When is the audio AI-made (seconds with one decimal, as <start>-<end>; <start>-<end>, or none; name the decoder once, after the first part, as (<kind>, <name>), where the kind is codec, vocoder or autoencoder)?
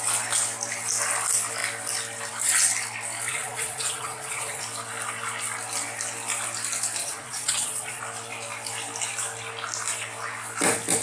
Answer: 3.3-4.6 (vocoder, Vocos); 7.0-8.0